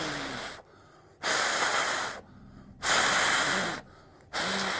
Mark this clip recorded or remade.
recorded